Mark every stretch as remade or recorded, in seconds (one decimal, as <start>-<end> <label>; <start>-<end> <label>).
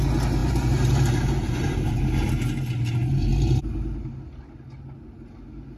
0.0-0.4 recorded; 0.4-2.3 remade; 2.3-5.8 recorded